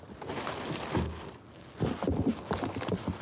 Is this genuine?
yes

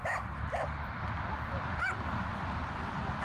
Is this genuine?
no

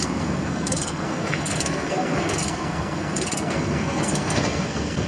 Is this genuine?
no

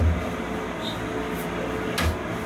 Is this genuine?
yes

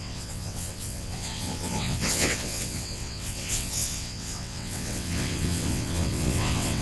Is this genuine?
no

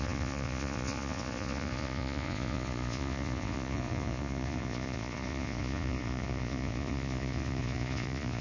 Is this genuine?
no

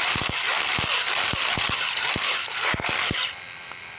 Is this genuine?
yes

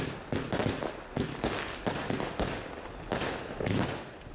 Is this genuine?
yes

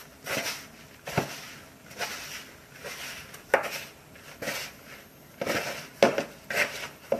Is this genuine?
yes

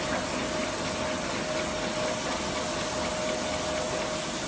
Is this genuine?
yes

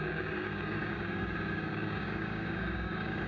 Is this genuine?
no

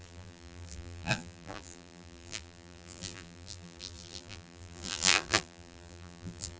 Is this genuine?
no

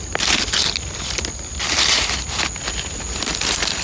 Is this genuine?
yes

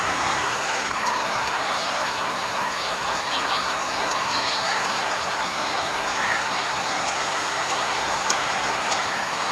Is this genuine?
no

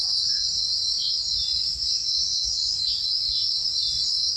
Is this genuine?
yes